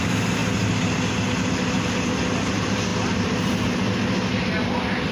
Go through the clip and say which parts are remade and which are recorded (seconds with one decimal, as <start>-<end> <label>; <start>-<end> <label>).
0.0-5.1 recorded